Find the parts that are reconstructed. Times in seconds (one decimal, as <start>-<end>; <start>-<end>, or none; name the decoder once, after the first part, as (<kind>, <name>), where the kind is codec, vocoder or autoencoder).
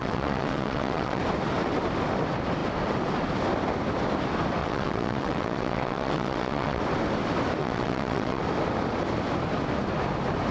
0.0-1.2 (vocoder, WaveNeXt); 4.6-6.8; 7.6-8.4